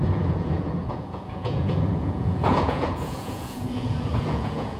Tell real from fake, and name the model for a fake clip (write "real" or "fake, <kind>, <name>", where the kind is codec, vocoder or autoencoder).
fake, vocoder, Vocos